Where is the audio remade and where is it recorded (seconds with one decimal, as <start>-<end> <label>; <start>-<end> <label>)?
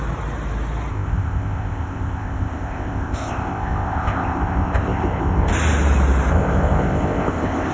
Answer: 0.0-0.9 recorded; 0.9-5.5 remade; 5.5-6.3 recorded; 6.3-7.7 remade